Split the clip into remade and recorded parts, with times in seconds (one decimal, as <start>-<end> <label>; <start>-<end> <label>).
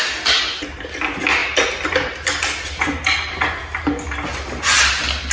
0.0-5.3 recorded